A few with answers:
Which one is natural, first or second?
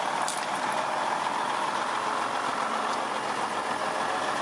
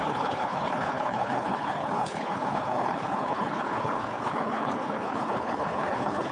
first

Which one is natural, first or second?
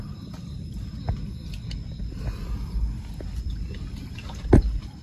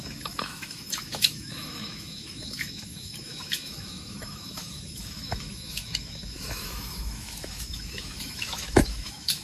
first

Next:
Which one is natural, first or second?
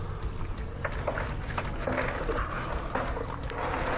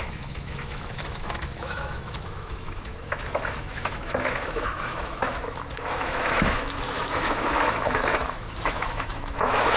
first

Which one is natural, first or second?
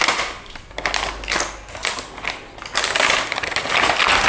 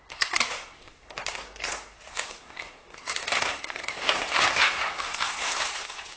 first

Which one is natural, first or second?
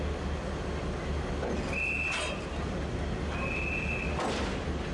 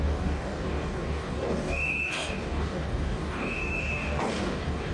first